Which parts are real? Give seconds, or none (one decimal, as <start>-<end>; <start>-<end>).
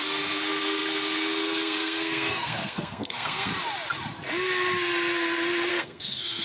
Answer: 3.5-5.7